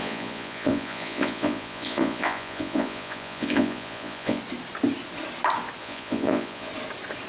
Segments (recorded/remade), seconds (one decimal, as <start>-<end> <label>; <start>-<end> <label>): 0.0-4.4 remade; 4.4-5.8 recorded; 5.8-6.7 remade; 6.7-7.3 recorded